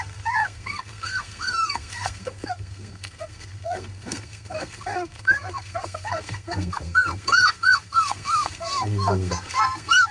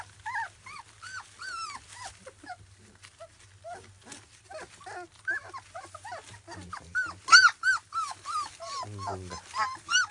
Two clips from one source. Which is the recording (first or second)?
second